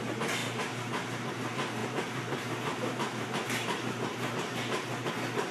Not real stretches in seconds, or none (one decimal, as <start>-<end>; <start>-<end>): 0.4-1.3; 1.8-5.1